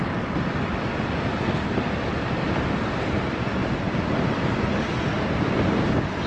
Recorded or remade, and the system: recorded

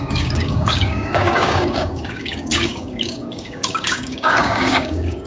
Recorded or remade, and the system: remade, codec, DAC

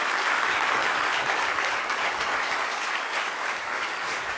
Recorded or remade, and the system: remade, codec, DAC